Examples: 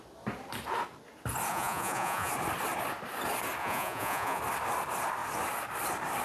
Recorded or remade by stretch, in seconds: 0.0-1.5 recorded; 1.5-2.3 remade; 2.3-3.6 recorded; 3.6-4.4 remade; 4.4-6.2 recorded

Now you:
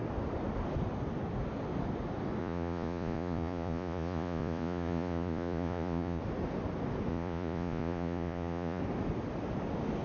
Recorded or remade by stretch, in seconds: 0.0-2.4 recorded; 2.4-6.2 remade; 6.2-7.1 recorded; 7.1-8.8 remade; 8.8-10.0 recorded

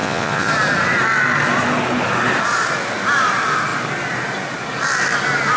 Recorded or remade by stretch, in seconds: 0.0-0.5 remade; 0.5-5.6 recorded

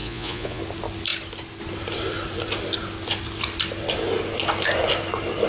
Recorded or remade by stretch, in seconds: 0.0-0.6 remade; 0.6-5.5 recorded

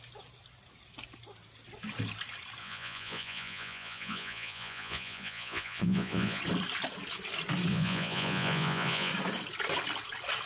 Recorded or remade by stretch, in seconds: 0.0-2.6 recorded; 2.6-6.4 remade; 6.4-7.7 recorded; 7.7-9.1 remade; 9.1-10.5 recorded

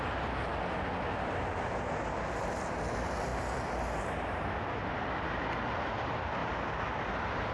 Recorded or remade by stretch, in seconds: 0.0-7.5 recorded

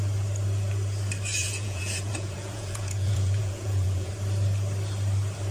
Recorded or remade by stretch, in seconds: 0.0-1.4 recorded; 1.4-4.1 remade; 4.1-5.5 recorded

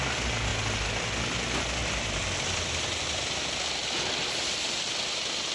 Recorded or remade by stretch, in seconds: 0.0-5.5 recorded